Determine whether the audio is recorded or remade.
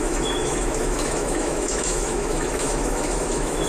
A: remade